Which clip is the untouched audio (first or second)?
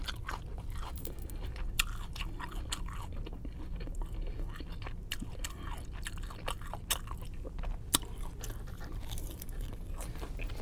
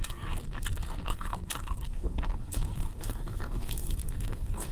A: first